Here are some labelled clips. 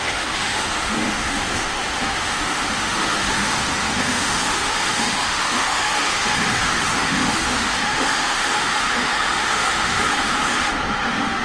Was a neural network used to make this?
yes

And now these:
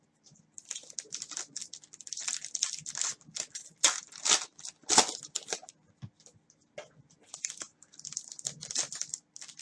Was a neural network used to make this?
no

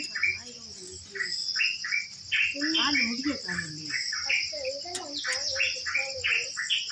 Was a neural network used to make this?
no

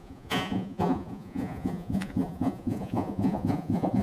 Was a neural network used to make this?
yes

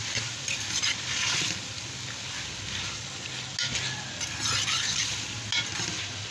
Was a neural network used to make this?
no